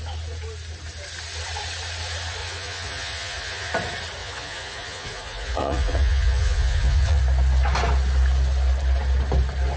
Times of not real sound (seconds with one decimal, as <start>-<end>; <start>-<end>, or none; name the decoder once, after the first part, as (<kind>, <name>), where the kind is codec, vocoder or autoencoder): 2.4-3.7 (vocoder, Vocos); 4.2-7.2